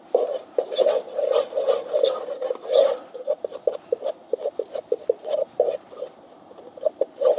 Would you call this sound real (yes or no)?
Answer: yes